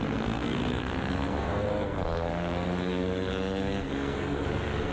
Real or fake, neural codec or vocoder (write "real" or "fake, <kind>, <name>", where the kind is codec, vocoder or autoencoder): fake, codec, SNAC